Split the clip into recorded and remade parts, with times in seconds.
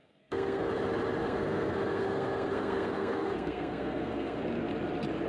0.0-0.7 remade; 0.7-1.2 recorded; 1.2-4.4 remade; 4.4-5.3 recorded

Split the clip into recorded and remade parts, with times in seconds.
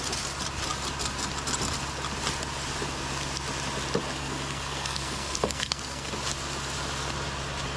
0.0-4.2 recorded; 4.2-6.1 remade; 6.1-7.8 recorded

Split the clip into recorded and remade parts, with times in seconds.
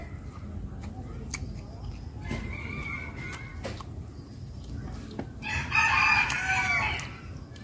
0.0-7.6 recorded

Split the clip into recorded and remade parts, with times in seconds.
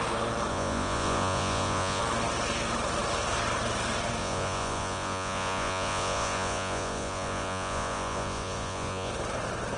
0.0-0.5 recorded; 0.5-2.0 remade; 2.0-4.2 recorded; 4.2-9.1 remade; 9.1-9.8 recorded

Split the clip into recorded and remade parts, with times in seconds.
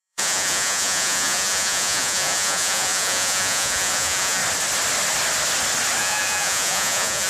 0.0-4.4 remade; 4.4-6.0 recorded; 6.0-7.3 remade